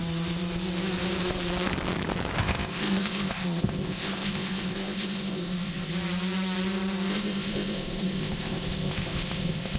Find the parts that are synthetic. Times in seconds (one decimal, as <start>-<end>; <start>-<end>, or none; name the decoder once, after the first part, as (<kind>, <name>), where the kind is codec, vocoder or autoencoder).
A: 2.4-5.9 (codec, ZipCodec); 7.1-9.8